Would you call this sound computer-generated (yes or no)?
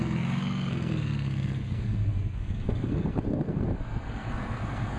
yes